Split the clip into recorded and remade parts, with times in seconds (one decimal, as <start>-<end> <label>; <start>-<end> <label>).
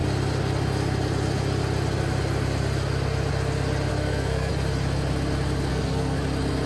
0.0-3.9 recorded; 3.9-4.5 remade; 4.5-5.7 recorded; 5.7-6.2 remade; 6.2-6.7 recorded